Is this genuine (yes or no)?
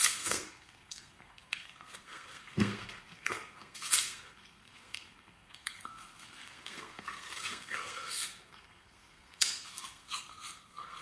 no